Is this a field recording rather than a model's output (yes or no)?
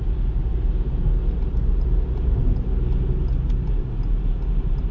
yes